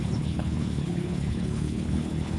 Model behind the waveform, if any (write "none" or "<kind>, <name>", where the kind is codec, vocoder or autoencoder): codec, HILCodec